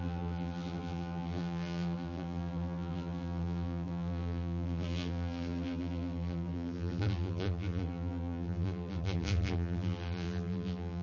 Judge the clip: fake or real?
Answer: fake